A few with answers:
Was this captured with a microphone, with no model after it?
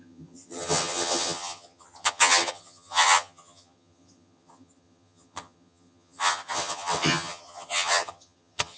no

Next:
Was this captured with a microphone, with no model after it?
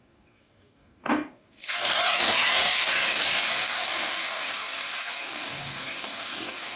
no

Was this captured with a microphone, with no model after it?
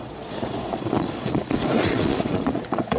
no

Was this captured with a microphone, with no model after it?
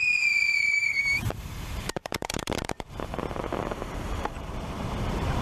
no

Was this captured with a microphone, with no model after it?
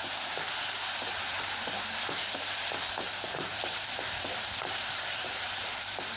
no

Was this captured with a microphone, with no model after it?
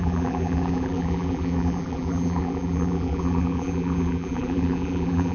no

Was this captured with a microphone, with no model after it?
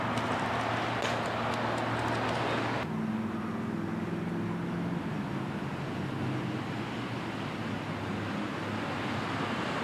yes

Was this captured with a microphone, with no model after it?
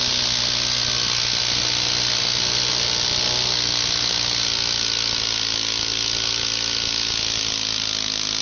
yes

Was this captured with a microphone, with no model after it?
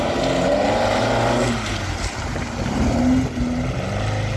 yes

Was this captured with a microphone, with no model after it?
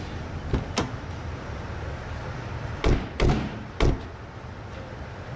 yes